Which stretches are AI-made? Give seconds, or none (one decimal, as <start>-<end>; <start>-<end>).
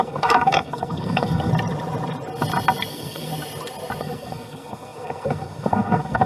0.0-1.5; 2.9-3.3; 4.0-6.3